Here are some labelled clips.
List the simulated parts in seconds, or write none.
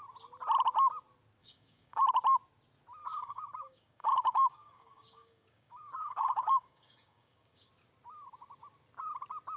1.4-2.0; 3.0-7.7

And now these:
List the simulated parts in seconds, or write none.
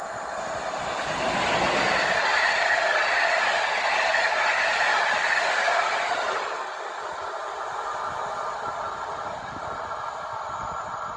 none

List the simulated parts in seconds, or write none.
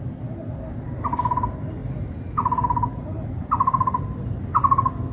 none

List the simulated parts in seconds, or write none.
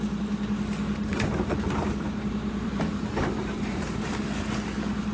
1.1-4.2